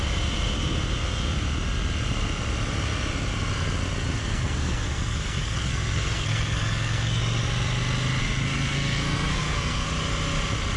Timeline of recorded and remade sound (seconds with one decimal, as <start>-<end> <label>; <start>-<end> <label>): 0.0-4.2 recorded; 4.2-7.2 remade; 7.2-8.2 recorded; 8.2-9.9 remade; 9.9-10.8 recorded